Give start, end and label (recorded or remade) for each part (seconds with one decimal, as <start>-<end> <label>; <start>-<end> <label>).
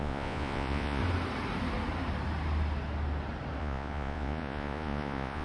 0.0-1.0 remade; 1.0-3.6 recorded; 3.6-5.4 remade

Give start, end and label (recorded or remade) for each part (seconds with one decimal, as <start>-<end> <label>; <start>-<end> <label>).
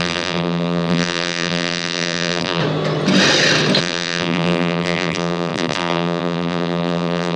0.0-2.6 remade; 2.6-3.8 recorded; 3.8-7.4 remade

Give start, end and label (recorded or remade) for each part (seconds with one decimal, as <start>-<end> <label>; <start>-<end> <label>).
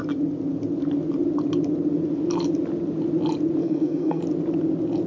0.0-3.6 recorded; 3.6-4.2 remade; 4.2-5.1 recorded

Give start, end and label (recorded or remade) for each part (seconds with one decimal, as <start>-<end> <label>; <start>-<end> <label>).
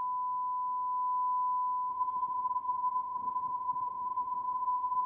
0.0-1.9 recorded; 1.9-5.1 remade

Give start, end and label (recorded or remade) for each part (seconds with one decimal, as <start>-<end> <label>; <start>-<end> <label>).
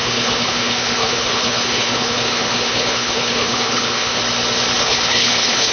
0.0-4.2 remade; 4.2-4.8 recorded; 4.8-5.7 remade